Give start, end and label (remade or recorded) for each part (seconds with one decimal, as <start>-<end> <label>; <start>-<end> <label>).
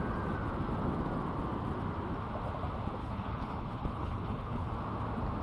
0.0-3.0 recorded; 3.0-4.7 remade; 4.7-5.4 recorded